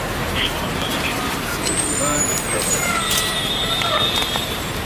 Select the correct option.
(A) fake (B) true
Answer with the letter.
A